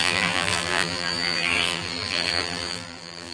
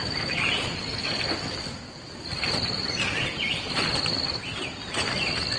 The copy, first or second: first